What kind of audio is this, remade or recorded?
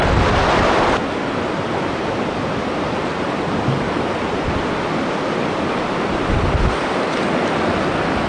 recorded